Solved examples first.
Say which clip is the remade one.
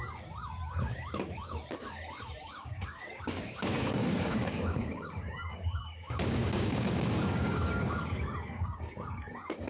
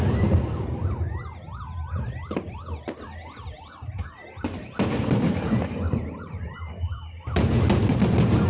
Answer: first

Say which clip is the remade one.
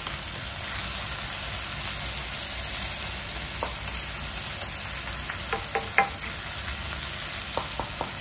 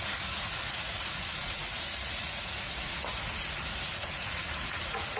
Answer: second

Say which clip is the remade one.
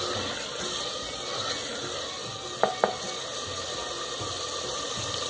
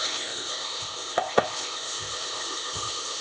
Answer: second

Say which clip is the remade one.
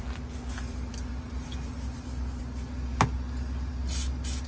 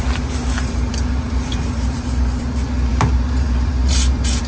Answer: second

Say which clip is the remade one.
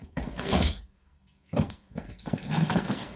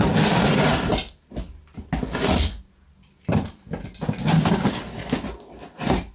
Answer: first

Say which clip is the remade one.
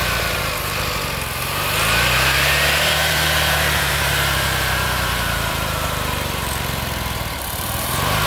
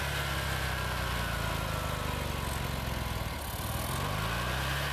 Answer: first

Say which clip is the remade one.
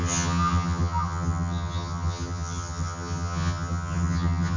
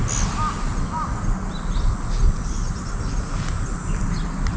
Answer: first